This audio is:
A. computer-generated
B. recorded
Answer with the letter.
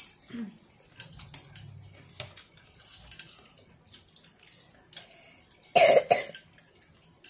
B